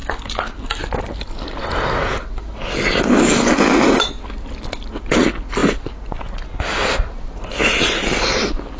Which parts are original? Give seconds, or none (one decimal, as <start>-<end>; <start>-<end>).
0.0-8.8